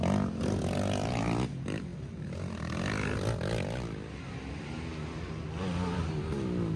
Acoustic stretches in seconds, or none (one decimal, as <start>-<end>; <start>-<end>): 0.0-6.8